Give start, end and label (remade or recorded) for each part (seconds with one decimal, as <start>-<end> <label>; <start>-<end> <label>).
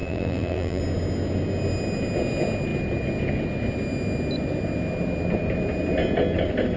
0.0-0.8 remade; 0.8-6.8 recorded